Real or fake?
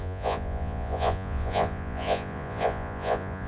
fake